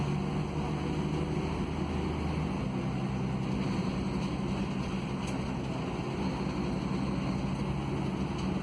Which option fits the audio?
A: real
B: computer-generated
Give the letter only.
A